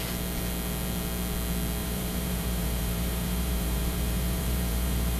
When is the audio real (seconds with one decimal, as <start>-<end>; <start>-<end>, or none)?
0.0-1.8